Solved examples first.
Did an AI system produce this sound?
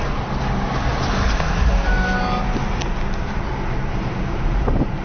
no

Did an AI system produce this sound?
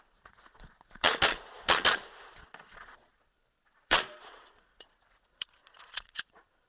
yes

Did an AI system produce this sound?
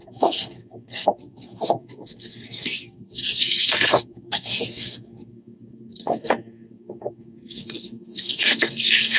yes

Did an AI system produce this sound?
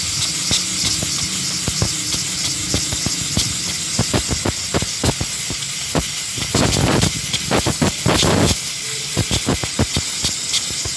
no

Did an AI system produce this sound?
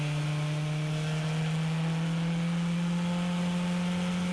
no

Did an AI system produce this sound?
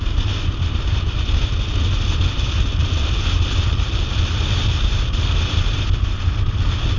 no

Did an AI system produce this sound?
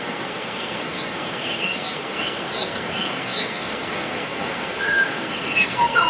yes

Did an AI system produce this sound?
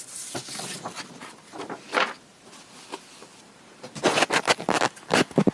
no